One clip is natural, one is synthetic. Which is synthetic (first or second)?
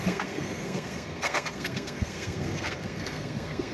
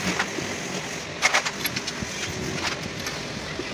first